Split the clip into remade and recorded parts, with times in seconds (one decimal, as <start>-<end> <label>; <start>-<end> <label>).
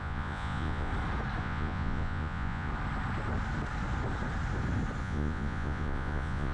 0.0-0.9 remade; 0.9-1.4 recorded; 1.4-2.7 remade; 2.7-5.0 recorded; 5.0-6.5 remade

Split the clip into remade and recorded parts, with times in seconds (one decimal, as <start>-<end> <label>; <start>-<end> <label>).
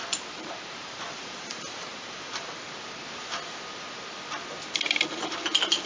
0.0-2.4 remade; 2.4-5.9 recorded